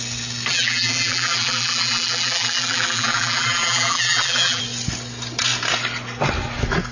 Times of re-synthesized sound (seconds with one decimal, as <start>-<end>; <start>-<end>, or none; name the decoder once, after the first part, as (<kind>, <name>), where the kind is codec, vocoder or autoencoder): 0.5-4.6 (vocoder, BigVGAN v2)